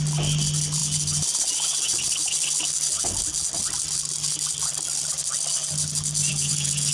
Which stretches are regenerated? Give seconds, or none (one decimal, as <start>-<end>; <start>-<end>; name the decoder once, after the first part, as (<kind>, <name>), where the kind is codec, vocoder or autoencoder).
6.2-6.9 (vocoder, Vocos)